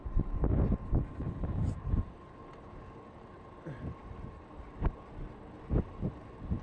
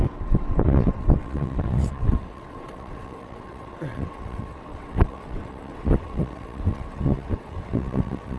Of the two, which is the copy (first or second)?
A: second